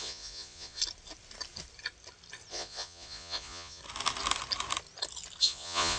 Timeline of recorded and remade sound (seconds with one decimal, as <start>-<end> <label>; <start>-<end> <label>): 0.0-0.8 remade; 0.8-2.5 recorded; 2.5-3.8 remade; 3.8-5.4 recorded; 5.4-6.0 remade

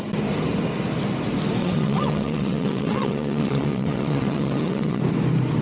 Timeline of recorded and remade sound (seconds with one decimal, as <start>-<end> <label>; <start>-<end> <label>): 0.0-1.6 recorded; 1.6-5.0 remade; 5.0-5.6 recorded

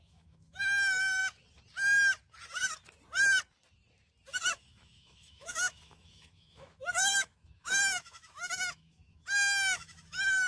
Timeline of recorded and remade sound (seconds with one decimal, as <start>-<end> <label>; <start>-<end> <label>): 0.0-1.2 remade; 1.2-4.5 recorded; 4.5-10.5 remade

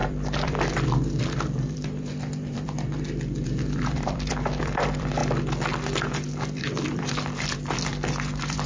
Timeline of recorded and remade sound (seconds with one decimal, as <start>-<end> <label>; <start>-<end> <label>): 0.0-5.2 remade; 5.2-6.3 recorded; 6.3-8.7 remade